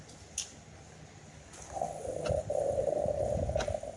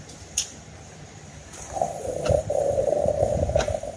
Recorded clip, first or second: first